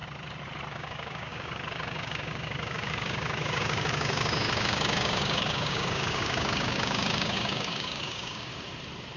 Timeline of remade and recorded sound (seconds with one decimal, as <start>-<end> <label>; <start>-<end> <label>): 0.0-0.7 recorded; 0.7-8.5 remade; 8.5-9.2 recorded